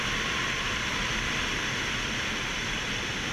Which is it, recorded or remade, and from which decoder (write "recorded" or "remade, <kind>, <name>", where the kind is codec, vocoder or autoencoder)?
remade, vocoder, BigVGAN v2